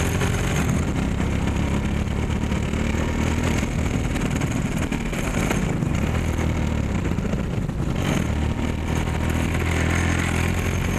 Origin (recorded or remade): recorded